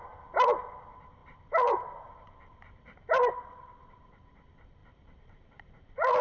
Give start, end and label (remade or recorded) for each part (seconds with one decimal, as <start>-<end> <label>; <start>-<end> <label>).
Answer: 0.0-1.2 recorded; 1.2-3.3 remade; 3.3-4.8 recorded; 4.8-6.2 remade